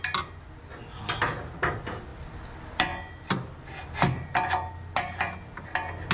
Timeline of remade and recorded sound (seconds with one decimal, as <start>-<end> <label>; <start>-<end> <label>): 0.0-6.1 recorded